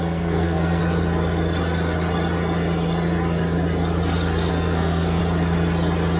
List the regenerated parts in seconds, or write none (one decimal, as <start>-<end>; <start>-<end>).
0.0-0.8; 4.5-5.2